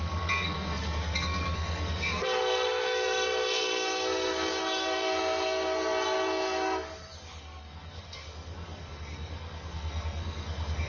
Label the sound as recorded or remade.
remade